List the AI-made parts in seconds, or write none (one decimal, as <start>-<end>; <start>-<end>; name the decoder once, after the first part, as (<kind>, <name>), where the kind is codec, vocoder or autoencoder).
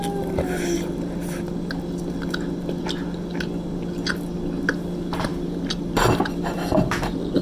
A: none